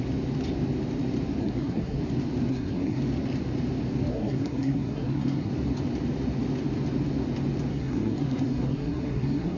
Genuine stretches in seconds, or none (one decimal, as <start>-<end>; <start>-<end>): 0.0-1.4; 2.0-2.5; 3.0-4.1; 5.5-7.7